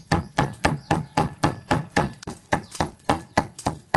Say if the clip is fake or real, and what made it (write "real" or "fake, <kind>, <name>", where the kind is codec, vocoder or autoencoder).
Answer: fake, vocoder, Vocos